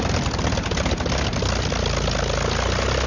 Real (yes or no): yes